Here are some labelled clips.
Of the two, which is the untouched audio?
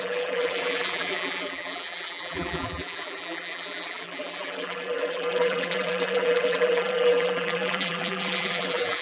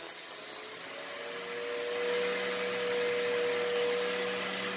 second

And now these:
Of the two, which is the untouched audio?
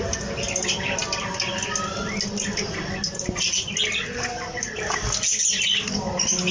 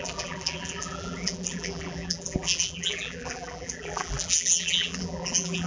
first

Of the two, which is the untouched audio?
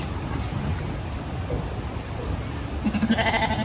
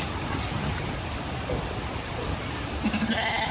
first